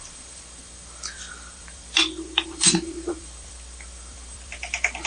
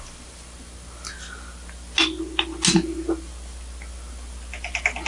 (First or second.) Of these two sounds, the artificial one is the first